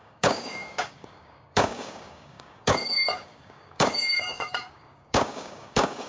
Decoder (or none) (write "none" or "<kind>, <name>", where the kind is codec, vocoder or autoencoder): codec, DAC